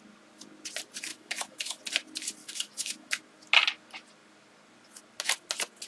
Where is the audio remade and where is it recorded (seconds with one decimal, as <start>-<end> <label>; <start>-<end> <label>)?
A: 0.0-1.1 recorded; 1.1-1.8 remade; 1.8-2.4 recorded; 2.4-3.2 remade; 3.2-5.9 recorded